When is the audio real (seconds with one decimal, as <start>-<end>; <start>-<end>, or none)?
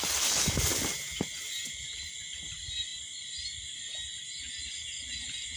0.0-5.6